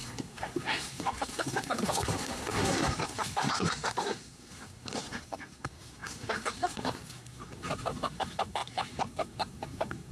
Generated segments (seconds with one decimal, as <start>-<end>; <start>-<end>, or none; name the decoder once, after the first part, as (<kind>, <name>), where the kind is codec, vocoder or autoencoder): 0.0-10.1 (codec, SNAC)